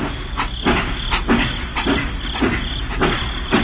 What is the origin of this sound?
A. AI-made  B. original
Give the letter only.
B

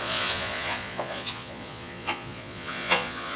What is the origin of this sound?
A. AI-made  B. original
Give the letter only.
A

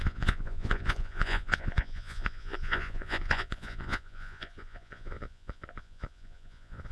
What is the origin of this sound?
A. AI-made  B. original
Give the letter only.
A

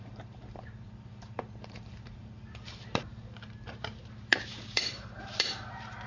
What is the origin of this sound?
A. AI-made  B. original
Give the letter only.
A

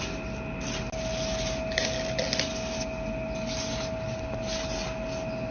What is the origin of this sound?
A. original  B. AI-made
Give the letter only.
A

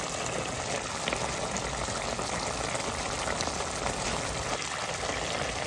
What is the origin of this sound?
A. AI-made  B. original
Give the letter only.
B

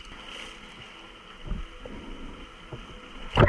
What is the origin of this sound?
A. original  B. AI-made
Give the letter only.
A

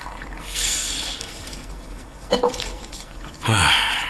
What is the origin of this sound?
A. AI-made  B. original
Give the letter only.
A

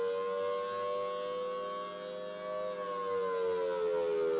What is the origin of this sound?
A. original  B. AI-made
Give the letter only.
A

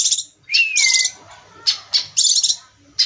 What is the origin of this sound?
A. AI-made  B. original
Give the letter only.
B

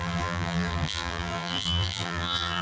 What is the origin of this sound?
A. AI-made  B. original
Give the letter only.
A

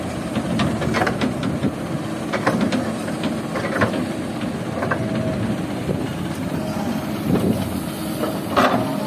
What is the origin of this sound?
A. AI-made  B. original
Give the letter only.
B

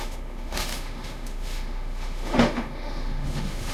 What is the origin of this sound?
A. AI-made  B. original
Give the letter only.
A